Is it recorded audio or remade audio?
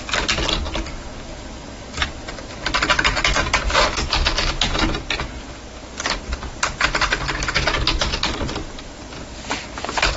recorded